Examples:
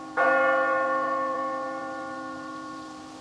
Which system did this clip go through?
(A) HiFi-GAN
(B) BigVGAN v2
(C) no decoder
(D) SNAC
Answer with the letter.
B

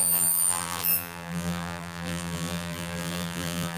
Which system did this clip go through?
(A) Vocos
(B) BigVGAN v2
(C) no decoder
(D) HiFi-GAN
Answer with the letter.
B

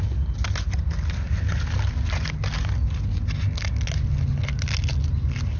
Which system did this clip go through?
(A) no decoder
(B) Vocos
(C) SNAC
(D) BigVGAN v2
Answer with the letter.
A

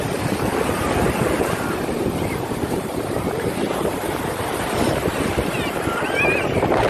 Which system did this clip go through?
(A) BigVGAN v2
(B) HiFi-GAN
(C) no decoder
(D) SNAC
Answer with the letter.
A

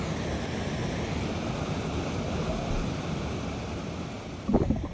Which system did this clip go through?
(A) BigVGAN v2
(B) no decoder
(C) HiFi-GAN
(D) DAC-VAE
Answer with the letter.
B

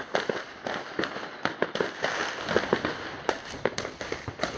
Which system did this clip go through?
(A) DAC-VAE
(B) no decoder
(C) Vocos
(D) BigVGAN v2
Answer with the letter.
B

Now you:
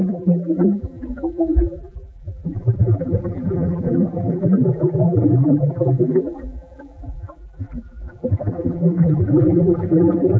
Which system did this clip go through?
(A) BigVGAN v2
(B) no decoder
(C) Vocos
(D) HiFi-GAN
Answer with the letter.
A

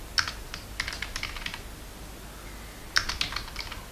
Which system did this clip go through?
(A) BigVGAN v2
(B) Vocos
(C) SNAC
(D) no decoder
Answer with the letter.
D